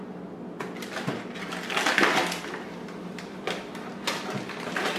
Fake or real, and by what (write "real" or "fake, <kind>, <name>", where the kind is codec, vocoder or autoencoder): real